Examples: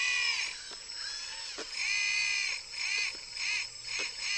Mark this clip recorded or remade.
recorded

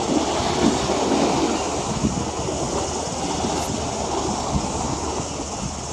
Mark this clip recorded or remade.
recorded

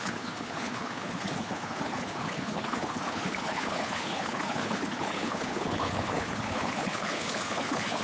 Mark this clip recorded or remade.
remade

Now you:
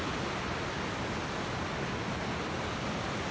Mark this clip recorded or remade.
recorded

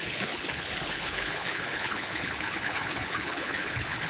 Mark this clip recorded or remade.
remade